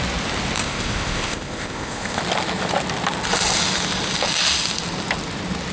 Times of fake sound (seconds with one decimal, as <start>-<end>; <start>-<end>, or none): 0.6-2.2